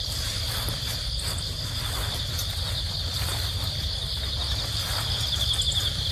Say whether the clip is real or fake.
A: real